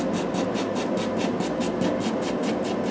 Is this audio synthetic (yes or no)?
no